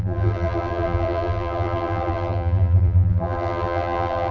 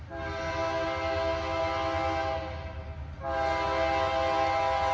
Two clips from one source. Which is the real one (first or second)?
second